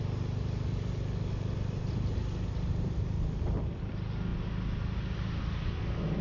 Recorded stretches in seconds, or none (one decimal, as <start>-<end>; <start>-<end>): 0.0-6.2